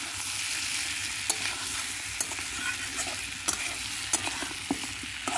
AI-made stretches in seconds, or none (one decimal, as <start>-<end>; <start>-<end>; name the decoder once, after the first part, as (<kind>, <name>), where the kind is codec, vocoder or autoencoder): none

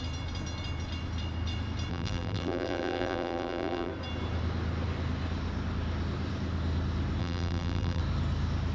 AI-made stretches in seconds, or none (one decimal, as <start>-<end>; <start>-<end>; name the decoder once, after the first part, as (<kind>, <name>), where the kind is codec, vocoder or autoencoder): 1.9-3.9 (vocoder, BigVGAN v2); 7.2-8.0

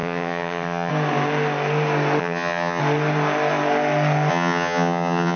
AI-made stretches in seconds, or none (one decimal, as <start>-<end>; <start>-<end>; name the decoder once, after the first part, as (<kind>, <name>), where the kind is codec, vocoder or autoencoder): 0.0-0.9 (vocoder, HiFi-GAN); 2.2-2.8; 4.3-5.4

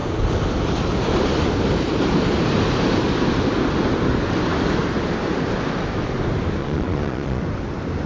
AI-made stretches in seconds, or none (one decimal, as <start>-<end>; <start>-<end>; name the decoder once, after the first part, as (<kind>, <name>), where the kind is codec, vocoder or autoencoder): 6.6-7.4 (vocoder, Vocos)

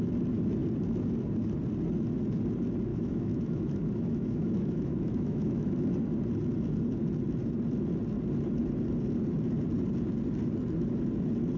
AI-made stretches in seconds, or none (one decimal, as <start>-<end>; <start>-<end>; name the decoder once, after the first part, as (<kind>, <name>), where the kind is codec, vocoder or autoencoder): 2.9-5.9 (autoencoder, DAC-VAE)